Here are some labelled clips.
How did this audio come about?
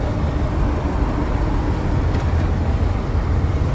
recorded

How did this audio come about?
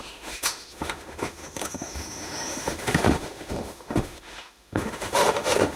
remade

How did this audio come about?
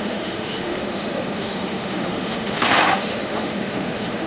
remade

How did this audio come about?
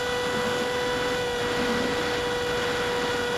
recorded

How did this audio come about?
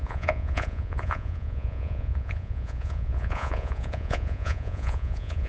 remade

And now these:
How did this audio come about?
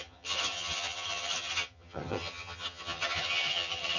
remade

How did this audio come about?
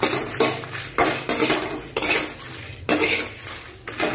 recorded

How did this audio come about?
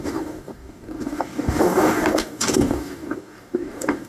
remade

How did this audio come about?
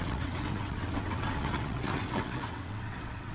remade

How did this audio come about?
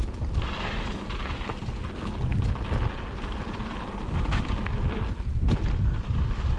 recorded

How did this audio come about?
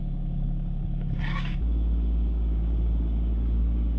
remade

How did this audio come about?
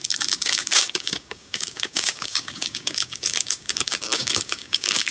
remade